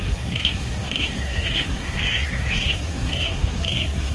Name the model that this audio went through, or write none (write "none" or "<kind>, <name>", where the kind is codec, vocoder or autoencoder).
codec, SNAC